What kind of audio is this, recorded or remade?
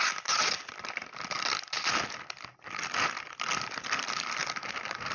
remade